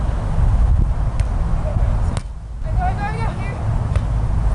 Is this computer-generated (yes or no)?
no